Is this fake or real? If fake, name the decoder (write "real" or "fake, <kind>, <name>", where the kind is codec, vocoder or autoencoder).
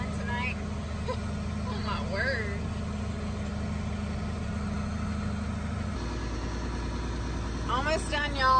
real